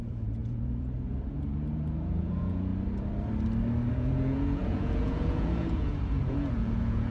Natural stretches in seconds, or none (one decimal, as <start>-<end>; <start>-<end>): 2.7-3.9

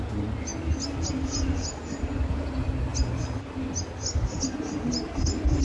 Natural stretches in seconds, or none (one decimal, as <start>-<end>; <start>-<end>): 0.0-5.6

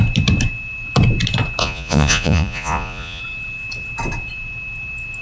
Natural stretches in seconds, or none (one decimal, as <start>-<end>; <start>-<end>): 0.0-1.6; 3.2-5.2

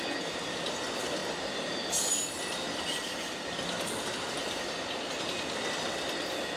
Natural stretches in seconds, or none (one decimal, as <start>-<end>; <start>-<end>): 0.0-6.6

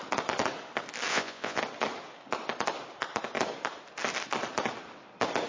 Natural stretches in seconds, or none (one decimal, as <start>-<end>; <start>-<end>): 0.0-1.1; 1.6-5.5

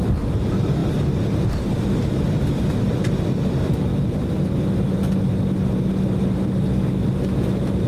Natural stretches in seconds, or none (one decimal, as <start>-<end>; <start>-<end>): 0.0-7.9

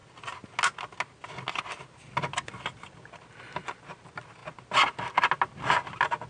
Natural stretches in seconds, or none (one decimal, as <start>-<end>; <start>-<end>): 0.0-6.3

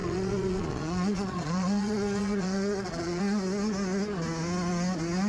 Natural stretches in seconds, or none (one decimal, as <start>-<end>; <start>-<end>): 3.2-5.3